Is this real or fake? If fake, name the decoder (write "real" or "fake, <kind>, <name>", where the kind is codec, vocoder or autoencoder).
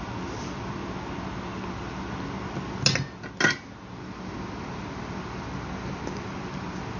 real